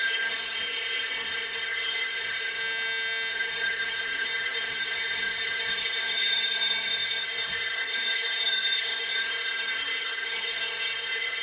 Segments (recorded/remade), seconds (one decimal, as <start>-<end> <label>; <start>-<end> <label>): 0.0-2.6 remade; 2.6-3.3 recorded; 3.3-11.4 remade